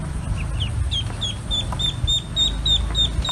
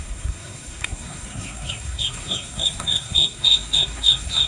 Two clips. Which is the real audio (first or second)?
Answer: first